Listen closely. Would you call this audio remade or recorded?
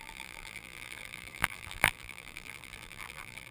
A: remade